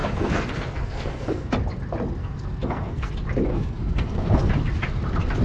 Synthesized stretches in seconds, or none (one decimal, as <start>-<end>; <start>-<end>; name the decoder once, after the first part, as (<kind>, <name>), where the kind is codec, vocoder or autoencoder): 0.0-1.5 (codec, SNAC); 2.2-3.1; 3.5-4.5